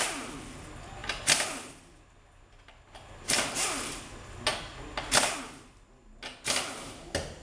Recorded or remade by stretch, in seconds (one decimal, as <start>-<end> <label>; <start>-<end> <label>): 0.0-7.4 recorded